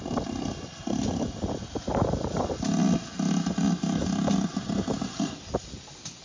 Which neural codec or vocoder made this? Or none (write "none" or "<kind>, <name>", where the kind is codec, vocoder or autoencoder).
none